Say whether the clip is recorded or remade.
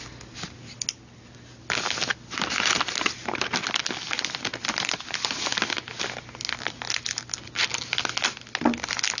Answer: recorded